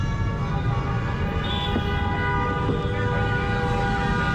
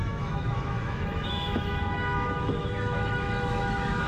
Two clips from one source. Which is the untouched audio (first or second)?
first